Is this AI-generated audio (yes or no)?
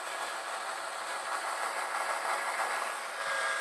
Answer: no